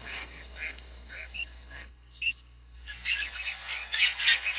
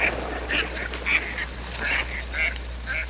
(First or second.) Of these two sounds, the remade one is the first